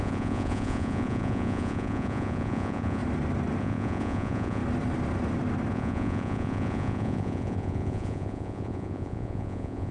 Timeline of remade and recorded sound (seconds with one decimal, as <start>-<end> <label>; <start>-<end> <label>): 0.0-3.0 remade; 3.0-3.6 recorded; 3.6-4.6 remade; 4.6-5.7 recorded; 5.7-9.9 remade